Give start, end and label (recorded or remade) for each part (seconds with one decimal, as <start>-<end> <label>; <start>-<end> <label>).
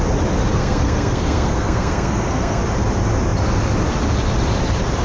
0.0-0.5 recorded; 0.5-2.6 remade; 2.6-5.0 recorded